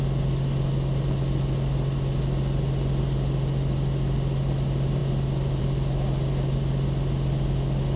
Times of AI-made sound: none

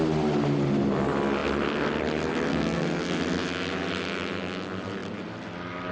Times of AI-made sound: 2.5-3.0 (codec, SNAC)